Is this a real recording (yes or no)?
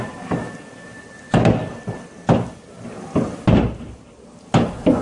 yes